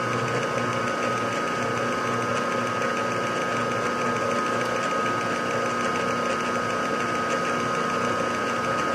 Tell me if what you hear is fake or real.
real